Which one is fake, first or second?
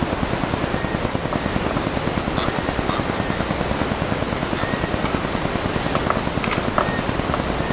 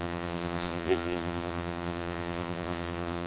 second